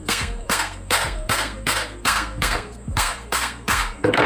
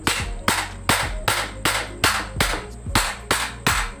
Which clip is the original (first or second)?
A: second